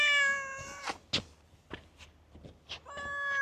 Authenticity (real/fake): real